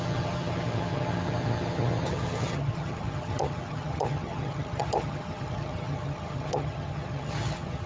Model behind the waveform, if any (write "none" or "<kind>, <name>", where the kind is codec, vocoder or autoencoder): vocoder, HiFi-GAN